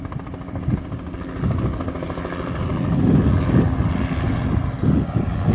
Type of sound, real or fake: real